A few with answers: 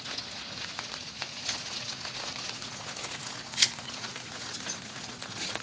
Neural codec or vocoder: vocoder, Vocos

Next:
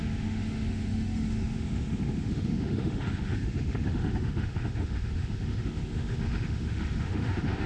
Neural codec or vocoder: autoencoder, DAC-VAE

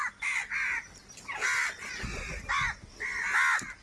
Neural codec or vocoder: none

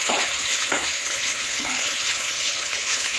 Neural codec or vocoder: codec, HILCodec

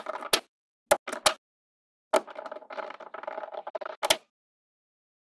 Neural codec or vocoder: none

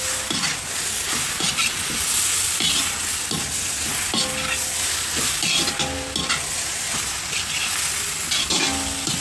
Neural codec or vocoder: none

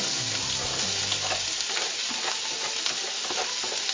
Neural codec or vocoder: none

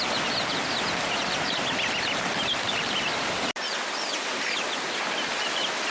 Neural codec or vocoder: none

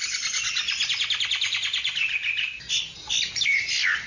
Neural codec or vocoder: none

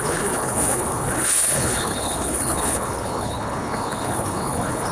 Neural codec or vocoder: codec, HILCodec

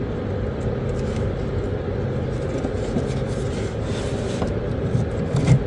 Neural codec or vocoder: none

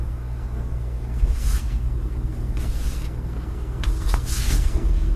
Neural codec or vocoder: codec, SNAC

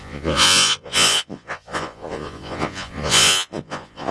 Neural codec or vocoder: vocoder, Vocos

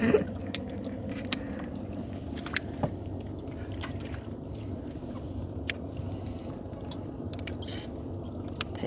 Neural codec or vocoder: vocoder, BigVGAN v2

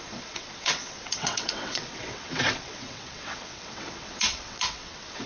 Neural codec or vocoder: vocoder, WaveNeXt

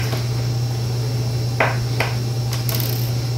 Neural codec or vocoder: none